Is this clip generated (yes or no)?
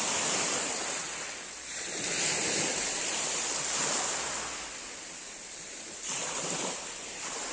yes